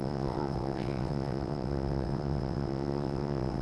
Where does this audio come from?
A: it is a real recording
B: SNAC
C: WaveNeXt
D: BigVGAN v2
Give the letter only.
C